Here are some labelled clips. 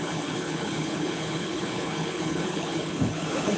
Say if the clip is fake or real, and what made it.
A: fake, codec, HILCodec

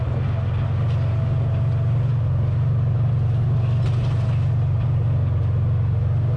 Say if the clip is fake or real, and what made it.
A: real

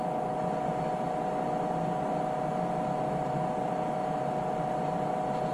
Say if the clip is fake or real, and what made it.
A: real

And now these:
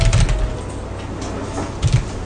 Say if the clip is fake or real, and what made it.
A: real